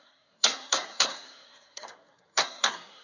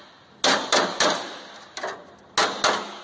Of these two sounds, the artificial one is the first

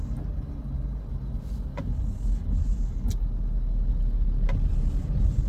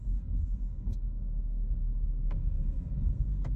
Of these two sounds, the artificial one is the second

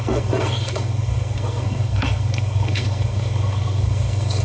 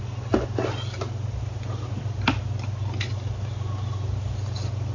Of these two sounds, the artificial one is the first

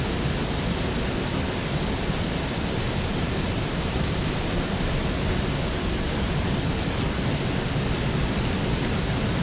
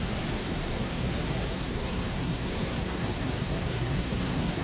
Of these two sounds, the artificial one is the second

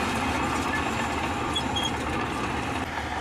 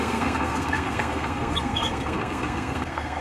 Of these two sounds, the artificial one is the second